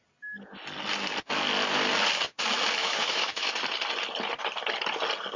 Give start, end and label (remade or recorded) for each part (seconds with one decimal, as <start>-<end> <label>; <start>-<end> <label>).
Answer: 0.0-2.8 recorded; 2.8-3.5 remade; 3.5-5.4 recorded